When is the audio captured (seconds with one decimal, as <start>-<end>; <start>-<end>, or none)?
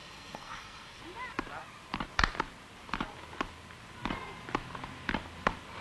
1.0-5.8